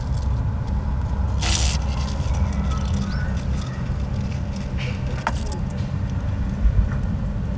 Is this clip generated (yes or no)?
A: no